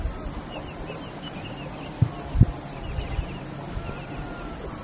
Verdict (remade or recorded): recorded